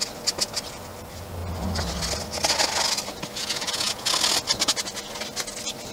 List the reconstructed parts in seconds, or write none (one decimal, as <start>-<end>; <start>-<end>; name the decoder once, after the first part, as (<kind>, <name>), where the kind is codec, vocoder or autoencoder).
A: 3.4-4.1 (vocoder, Vocos)

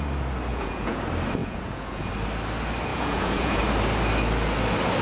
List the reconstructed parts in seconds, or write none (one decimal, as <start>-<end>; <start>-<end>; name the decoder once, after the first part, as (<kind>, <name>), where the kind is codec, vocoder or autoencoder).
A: 0.5-1.0 (vocoder, Vocos); 1.4-2.1; 2.9-3.6

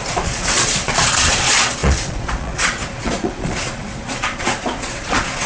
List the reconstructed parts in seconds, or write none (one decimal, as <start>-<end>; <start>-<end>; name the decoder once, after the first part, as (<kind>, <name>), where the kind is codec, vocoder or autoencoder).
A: 0.0-5.5 (vocoder, Vocos)

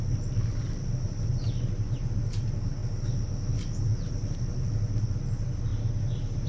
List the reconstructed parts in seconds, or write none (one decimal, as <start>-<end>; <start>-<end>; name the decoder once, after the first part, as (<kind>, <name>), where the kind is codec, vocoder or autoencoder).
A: none

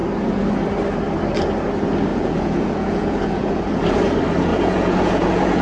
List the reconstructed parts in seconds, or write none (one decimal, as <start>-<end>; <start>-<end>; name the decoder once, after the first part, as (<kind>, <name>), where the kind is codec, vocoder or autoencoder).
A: 2.1-3.8 (vocoder, Vocos); 4.5-5.6